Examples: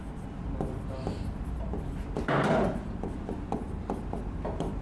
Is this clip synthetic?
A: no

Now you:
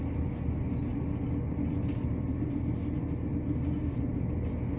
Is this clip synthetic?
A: no